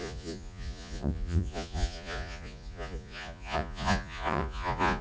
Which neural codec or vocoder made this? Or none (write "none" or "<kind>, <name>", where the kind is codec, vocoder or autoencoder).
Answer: vocoder, Vocos